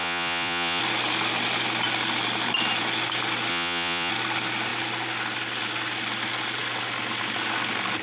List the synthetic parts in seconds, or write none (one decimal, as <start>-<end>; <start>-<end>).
0.0-0.8; 3.5-4.1